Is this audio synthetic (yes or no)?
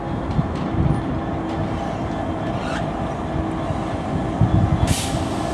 no